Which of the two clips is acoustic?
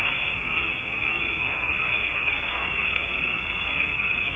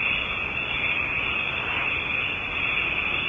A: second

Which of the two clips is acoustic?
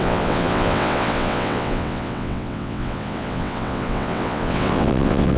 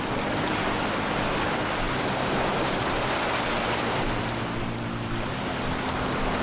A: second